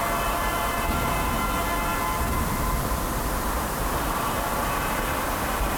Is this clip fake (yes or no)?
no